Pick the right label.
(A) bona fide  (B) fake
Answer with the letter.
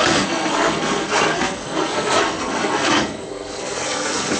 B